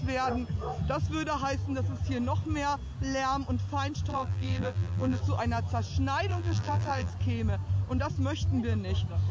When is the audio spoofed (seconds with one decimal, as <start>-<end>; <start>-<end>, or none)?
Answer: 4.1-5.2; 6.3-7.1

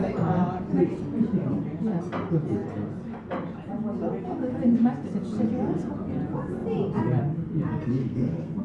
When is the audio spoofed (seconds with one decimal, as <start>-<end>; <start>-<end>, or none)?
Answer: 8.0-8.6

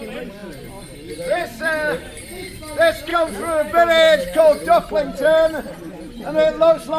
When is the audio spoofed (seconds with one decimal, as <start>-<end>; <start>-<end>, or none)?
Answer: 3.1-4.4